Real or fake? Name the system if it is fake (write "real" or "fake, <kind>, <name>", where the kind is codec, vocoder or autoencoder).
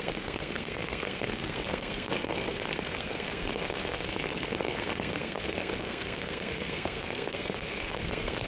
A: fake, codec, SNAC